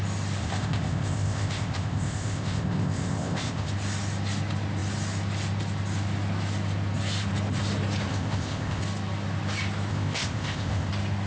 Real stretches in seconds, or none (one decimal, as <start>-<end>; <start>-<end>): 0.0-0.4; 3.7-8.1; 8.8-9.9; 10.9-11.3